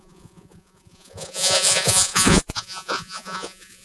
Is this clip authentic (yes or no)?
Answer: no